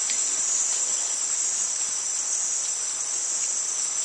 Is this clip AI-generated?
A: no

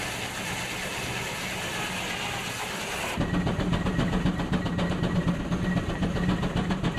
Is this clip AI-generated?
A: no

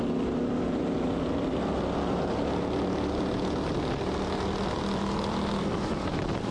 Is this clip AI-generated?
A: no